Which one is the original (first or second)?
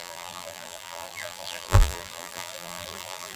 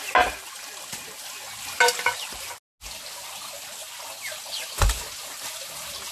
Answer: second